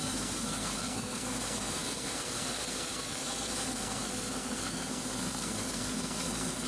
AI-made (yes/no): yes